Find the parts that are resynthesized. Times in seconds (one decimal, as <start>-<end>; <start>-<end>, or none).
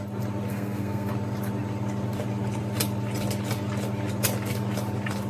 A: 0.5-1.1